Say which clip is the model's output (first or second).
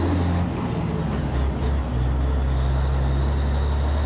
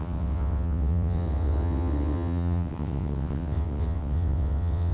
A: second